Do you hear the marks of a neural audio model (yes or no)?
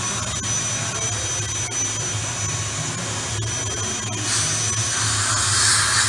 no